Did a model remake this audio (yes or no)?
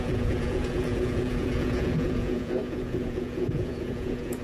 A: yes